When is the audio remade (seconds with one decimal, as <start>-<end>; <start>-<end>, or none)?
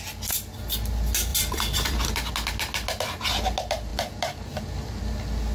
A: 1.3-2.3; 3.9-4.6